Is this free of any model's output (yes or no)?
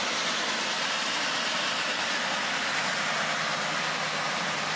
yes